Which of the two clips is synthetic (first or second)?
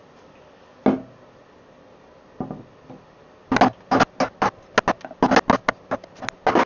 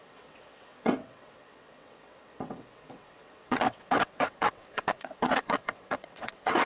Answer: second